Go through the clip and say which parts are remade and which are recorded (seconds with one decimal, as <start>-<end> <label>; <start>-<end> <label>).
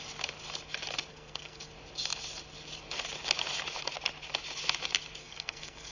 0.0-1.1 recorded; 1.1-1.7 remade; 1.7-5.2 recorded; 5.2-5.9 remade